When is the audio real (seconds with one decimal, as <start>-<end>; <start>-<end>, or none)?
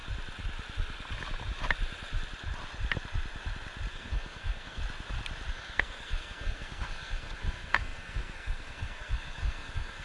0.0-3.9; 4.8-5.5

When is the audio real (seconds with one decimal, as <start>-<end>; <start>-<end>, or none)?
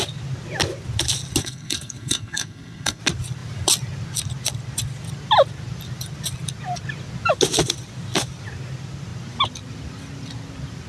0.0-1.4; 3.0-10.9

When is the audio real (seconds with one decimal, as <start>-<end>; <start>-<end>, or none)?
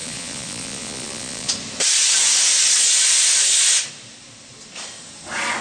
1.5-5.6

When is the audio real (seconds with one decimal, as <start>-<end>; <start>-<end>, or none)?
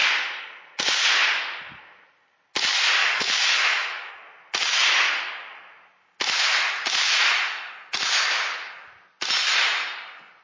0.0-3.0; 4.1-10.4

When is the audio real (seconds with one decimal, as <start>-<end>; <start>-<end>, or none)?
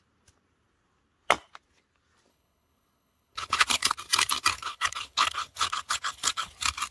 0.0-2.3; 3.9-4.5; 6.5-6.9